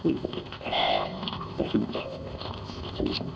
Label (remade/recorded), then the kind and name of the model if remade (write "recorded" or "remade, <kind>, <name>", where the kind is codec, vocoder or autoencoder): remade, codec, ZipCodec